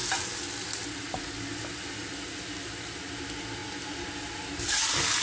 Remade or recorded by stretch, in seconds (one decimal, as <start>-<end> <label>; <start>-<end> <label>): 0.0-5.2 recorded